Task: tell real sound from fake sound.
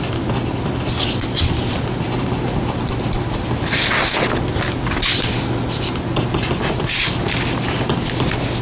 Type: real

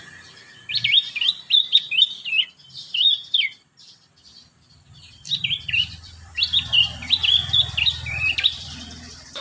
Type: fake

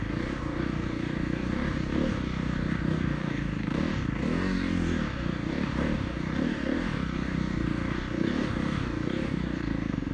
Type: fake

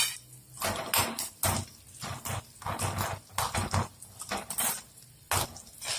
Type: real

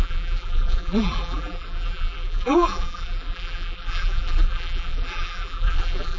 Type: fake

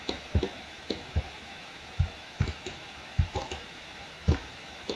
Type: fake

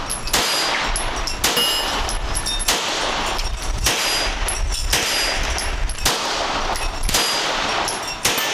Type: real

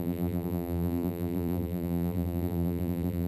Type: fake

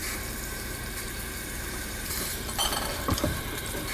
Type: fake